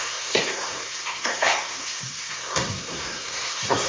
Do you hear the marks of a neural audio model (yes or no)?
yes